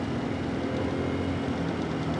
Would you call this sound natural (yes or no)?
yes